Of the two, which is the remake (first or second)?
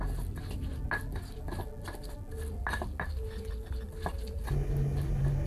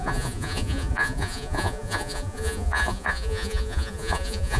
second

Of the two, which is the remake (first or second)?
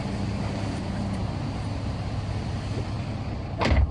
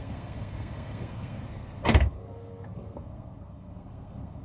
second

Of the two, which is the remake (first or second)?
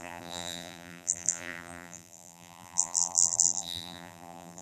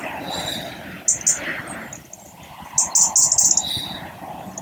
first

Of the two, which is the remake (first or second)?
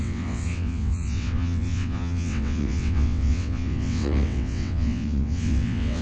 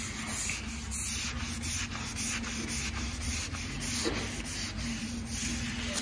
first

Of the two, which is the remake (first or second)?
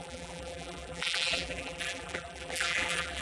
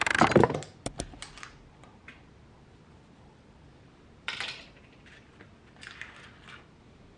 first